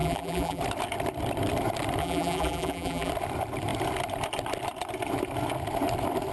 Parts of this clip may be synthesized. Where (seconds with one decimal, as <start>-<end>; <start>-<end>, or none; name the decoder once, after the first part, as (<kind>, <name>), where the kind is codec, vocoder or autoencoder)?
0.0-0.6 (vocoder, BigVGAN v2); 2.0-3.1